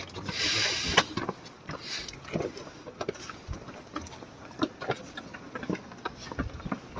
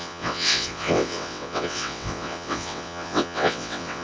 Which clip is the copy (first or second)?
second